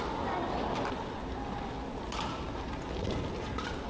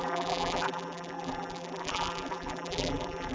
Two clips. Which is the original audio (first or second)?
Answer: first